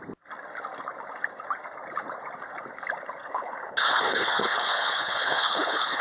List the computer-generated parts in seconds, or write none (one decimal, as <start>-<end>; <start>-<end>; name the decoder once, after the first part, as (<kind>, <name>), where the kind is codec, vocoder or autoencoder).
3.2-6.0 (codec, HILCodec)